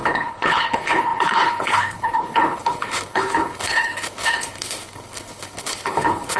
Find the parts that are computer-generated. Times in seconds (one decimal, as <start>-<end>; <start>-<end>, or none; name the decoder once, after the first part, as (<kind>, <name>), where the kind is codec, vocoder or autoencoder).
0.0-6.4 (codec, HILCodec)